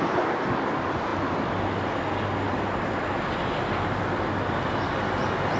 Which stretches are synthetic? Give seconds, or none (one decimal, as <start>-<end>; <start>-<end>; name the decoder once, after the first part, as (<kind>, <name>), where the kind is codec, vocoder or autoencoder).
none